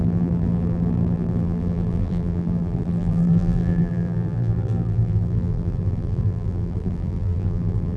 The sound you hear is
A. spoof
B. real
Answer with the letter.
A